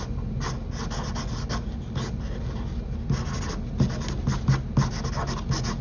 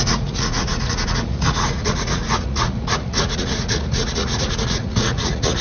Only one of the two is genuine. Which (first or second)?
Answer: first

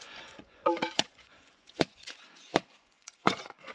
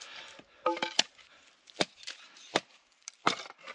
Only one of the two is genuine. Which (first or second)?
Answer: second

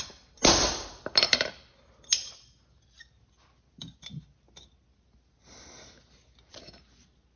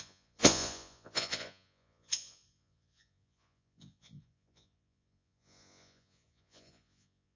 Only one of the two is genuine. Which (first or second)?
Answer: first